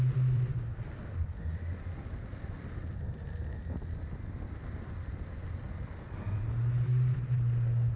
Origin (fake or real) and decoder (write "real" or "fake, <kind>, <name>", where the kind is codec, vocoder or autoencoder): real